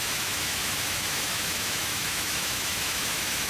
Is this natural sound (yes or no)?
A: no